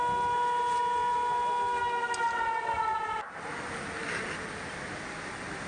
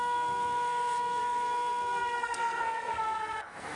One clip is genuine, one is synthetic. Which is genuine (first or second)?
first